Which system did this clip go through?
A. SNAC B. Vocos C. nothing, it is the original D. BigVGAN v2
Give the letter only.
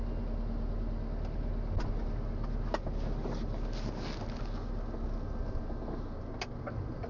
C